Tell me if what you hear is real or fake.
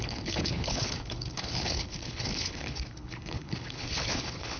fake